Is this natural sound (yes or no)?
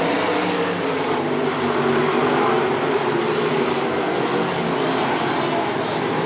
yes